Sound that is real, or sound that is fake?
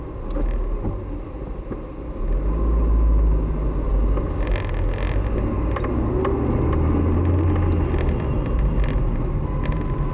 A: real